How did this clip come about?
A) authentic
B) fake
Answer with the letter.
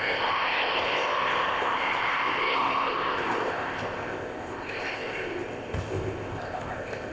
B